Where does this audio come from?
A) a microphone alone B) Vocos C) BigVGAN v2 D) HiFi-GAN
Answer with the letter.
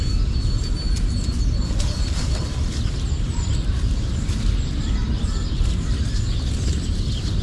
A